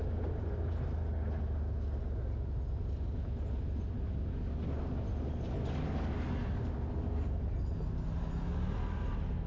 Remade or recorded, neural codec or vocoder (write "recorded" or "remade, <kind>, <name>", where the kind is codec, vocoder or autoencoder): recorded